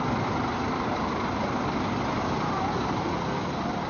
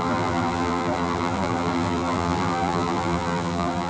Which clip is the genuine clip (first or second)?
first